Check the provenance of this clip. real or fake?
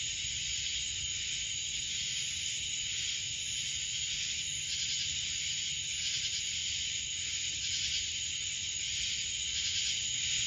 real